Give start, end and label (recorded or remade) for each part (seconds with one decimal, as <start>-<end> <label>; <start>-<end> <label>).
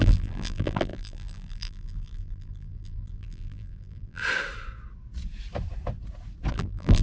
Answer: 0.0-4.2 remade; 4.2-6.5 recorded; 6.5-7.0 remade